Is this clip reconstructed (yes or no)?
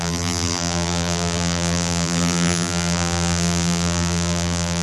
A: yes